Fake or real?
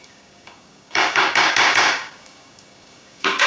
fake